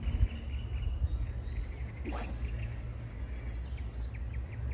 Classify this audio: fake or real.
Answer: real